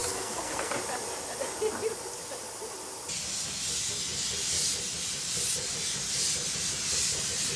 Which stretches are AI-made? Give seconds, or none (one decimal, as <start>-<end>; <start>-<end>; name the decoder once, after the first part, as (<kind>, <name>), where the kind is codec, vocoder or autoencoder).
0.0-0.7 (codec, SNAC)